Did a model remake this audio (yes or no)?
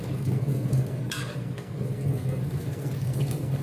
yes